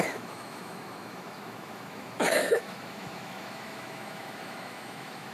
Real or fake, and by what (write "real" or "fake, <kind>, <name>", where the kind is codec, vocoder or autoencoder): fake, autoencoder, DAC-VAE